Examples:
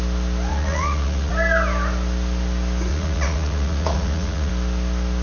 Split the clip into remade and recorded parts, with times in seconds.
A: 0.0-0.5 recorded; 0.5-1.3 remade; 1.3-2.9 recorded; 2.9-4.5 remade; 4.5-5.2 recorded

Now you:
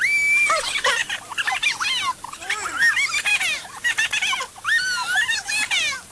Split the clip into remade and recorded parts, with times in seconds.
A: 0.0-6.1 recorded

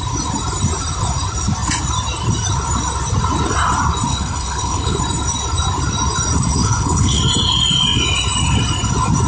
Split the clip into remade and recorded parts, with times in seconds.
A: 0.0-4.1 recorded; 4.1-5.0 remade; 5.0-6.6 recorded; 6.6-7.2 remade; 7.2-9.3 recorded